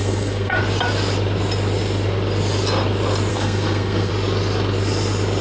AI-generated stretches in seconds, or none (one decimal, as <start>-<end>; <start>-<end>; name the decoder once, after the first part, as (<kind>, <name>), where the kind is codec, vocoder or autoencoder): 0.0-0.6 (codec, SNAC); 3.3-4.1